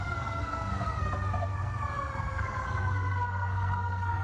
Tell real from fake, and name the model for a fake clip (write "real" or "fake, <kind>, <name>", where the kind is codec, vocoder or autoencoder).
fake, codec, SNAC